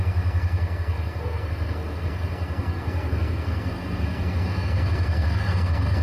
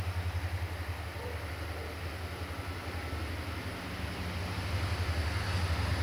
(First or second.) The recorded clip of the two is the second